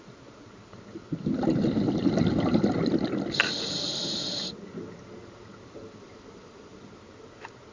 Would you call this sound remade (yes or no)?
no